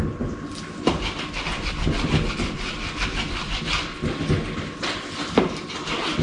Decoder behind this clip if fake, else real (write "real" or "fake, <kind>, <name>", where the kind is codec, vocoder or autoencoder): real